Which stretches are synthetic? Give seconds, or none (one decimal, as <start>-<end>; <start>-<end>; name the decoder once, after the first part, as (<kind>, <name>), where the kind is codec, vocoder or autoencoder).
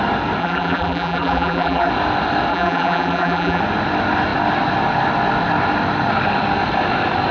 0.4-1.9 (vocoder, BigVGAN v2); 2.5-3.6